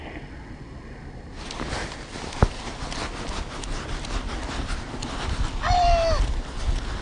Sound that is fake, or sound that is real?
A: real